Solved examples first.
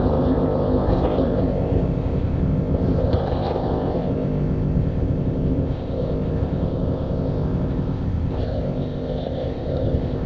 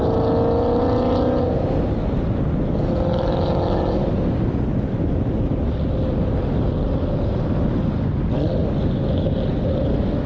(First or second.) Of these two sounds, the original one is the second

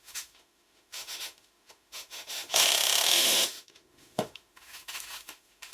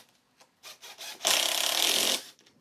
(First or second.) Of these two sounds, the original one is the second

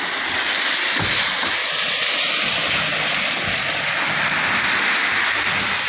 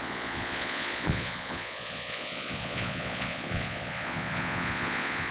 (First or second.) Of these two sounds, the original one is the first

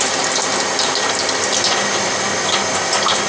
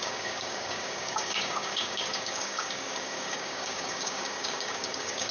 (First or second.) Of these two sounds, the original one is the first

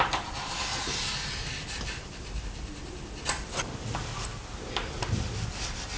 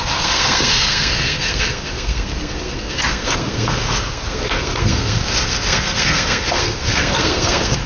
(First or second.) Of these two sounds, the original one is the first